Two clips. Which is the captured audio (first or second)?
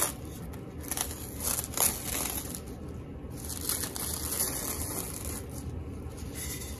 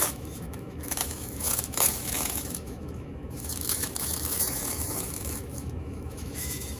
first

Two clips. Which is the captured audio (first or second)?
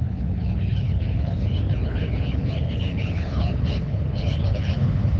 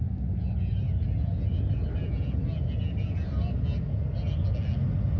second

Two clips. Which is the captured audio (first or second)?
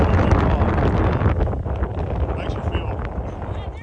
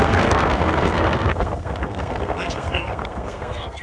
first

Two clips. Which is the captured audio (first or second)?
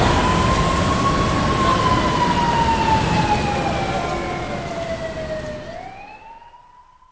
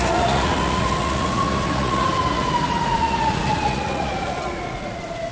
first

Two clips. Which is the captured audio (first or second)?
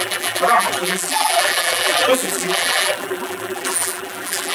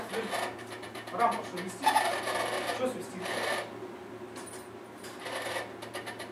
second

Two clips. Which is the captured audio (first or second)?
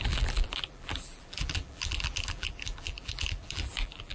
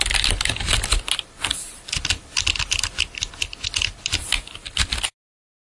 second